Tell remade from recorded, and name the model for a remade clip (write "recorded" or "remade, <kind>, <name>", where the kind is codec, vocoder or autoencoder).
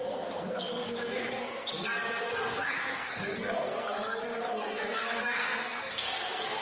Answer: remade, codec, SNAC